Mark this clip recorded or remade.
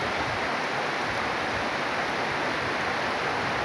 recorded